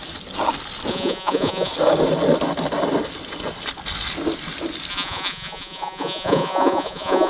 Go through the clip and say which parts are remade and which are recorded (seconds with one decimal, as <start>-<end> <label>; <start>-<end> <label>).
0.0-0.9 recorded; 0.9-1.7 remade; 1.7-4.9 recorded; 4.9-7.3 remade